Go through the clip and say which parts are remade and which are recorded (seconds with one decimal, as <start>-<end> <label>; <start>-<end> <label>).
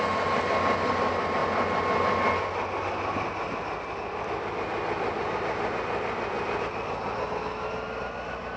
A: 0.0-8.6 recorded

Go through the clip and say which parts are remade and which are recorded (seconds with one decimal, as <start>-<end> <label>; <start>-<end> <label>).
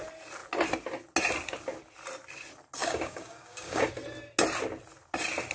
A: 0.0-2.8 recorded; 2.8-3.9 remade; 3.9-5.5 recorded